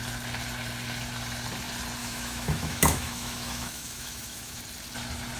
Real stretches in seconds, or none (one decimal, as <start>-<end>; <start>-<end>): 0.0-2.0; 4.6-5.4